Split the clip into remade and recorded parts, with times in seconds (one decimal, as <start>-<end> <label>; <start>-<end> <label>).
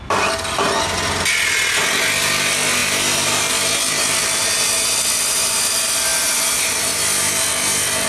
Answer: 0.0-8.1 recorded